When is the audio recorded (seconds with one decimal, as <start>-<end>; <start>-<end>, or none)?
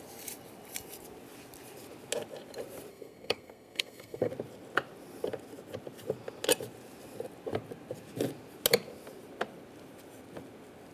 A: 0.0-2.9; 4.3-10.9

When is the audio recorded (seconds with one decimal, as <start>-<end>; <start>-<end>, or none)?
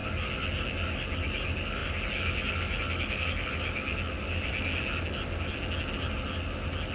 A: 0.0-6.9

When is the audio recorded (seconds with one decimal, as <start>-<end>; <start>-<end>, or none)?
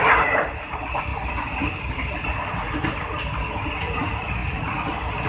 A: 1.1-3.8; 4.4-5.3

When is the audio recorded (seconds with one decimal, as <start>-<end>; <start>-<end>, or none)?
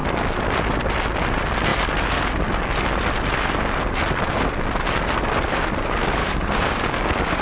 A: 0.0-6.2